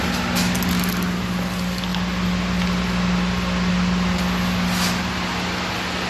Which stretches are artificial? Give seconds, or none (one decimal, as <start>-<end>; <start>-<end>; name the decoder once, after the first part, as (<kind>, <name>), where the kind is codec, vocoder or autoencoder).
none